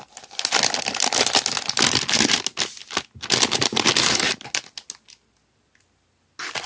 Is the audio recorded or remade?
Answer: recorded